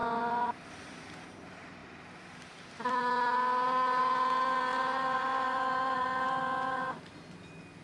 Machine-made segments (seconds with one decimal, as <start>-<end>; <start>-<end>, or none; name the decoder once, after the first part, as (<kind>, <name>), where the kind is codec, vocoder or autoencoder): 4.7-7.2 (vocoder, BigVGAN v2)